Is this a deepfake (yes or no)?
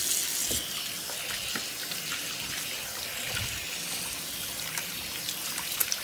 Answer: no